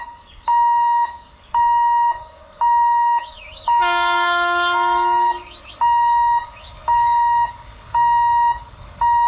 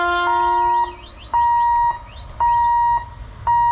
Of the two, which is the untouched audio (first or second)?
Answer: second